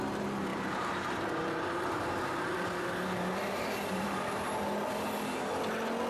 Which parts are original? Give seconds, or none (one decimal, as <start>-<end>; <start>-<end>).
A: 0.0-0.5; 4.2-6.1

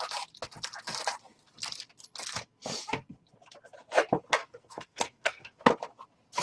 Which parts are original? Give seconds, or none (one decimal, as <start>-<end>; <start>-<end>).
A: 0.0-4.4; 5.7-6.4